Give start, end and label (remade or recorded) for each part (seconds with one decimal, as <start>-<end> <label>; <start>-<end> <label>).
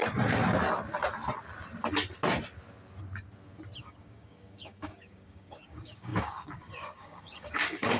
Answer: 0.0-3.8 recorded; 3.8-8.0 remade